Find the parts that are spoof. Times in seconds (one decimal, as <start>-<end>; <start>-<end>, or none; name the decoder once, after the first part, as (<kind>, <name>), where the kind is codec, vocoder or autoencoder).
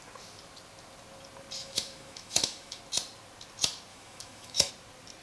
1.6-2.8 (autoencoder, DAC-VAE); 3.9-4.7